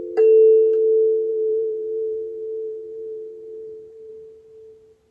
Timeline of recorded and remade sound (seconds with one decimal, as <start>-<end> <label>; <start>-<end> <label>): 0.0-1.3 recorded; 1.3-4.1 remade; 4.1-5.1 recorded